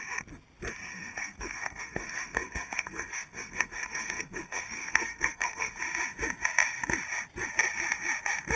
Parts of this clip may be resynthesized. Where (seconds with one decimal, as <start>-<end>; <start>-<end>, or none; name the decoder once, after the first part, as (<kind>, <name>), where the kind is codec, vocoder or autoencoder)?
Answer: 0.9-5.8 (codec, SNAC)